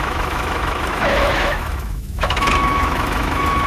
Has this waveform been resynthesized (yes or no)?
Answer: yes